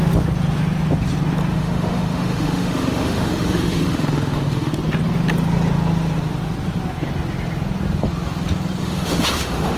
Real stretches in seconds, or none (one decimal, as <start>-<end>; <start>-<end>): 0.0-1.5; 4.7-8.8